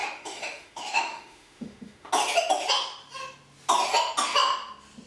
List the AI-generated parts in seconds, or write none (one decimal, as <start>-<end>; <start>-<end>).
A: 0.0-2.1